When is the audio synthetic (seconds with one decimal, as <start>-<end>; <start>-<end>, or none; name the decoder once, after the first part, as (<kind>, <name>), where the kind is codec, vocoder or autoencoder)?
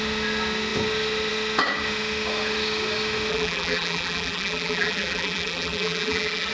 3.3-6.5 (vocoder, BigVGAN v2)